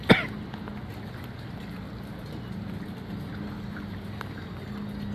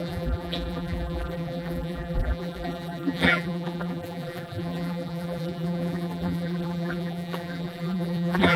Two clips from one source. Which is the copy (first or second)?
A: second